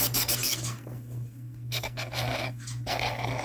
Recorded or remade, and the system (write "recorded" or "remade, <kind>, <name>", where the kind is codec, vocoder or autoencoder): remade, codec, SNAC